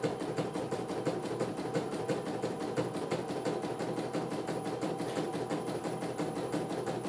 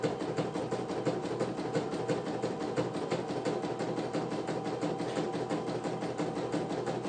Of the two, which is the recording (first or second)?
second